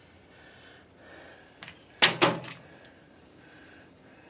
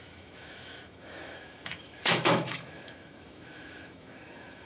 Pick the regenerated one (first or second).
second